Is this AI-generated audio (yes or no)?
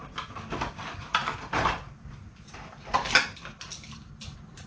no